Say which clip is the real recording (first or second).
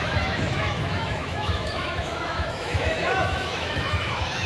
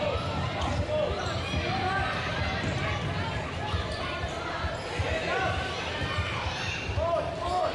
second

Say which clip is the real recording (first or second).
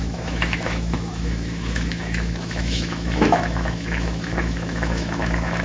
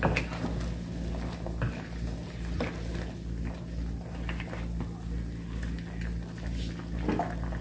second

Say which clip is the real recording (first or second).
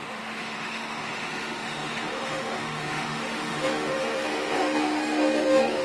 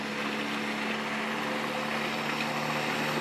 second